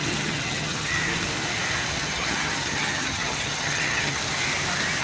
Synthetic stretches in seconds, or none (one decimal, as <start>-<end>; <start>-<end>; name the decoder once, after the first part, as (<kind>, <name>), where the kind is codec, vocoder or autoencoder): 0.0-1.0 (vocoder, HiFi-GAN); 2.0-4.2